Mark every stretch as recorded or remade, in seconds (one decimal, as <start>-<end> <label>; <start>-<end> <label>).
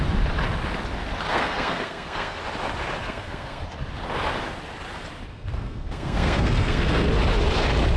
0.0-1.3 recorded; 1.3-2.4 remade; 2.4-3.0 recorded; 3.0-3.6 remade; 3.6-5.3 recorded; 5.3-7.1 remade; 7.1-8.0 recorded